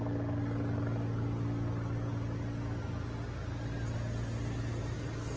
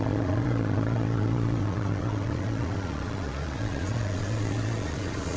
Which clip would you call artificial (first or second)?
second